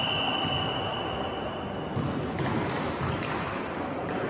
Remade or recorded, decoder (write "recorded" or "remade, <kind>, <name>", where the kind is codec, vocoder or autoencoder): remade, vocoder, BigVGAN v2